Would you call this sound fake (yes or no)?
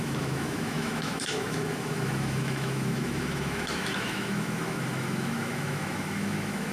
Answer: yes